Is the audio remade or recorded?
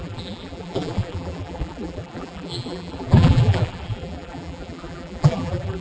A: remade